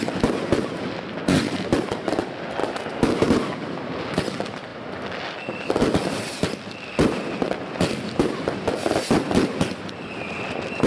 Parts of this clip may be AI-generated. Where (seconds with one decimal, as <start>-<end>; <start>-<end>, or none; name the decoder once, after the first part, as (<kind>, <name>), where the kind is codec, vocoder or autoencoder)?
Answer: none